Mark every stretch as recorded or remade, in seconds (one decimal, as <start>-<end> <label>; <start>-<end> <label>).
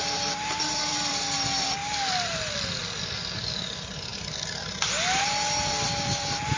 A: 0.0-6.6 recorded